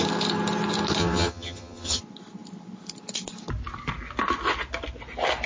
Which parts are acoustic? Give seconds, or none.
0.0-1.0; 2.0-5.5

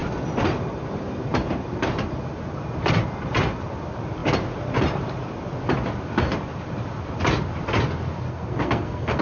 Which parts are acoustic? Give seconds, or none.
0.0-8.3

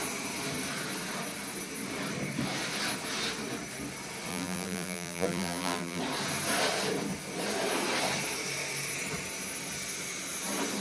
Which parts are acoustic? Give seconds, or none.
0.0-4.3; 6.0-10.8

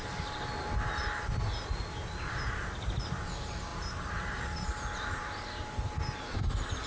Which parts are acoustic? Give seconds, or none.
0.0-3.7

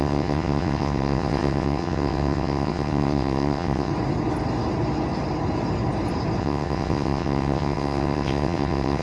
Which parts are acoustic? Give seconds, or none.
3.9-6.4

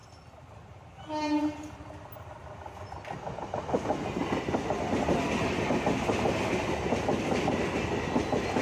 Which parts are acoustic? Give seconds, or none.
0.0-8.6

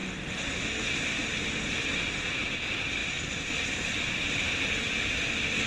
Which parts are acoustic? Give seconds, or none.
0.0-3.0; 4.0-5.7